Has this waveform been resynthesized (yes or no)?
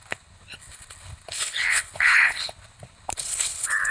yes